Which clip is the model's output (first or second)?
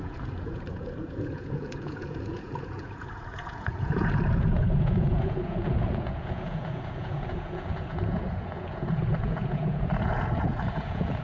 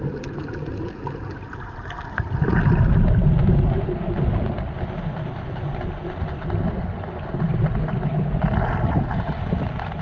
first